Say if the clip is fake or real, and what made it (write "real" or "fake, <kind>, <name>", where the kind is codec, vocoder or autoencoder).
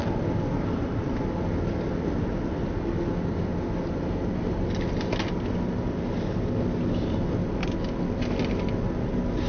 real